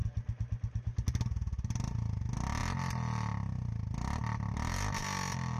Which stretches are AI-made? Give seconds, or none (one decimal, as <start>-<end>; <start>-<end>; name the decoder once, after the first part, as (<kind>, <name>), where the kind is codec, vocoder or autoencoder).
none